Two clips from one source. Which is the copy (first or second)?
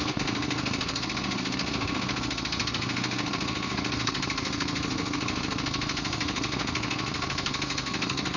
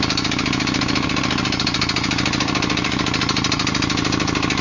first